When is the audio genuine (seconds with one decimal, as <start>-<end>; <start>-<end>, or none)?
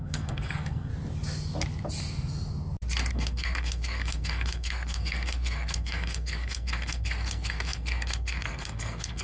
0.9-3.1